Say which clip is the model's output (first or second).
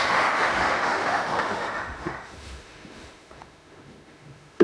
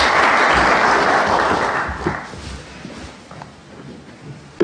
first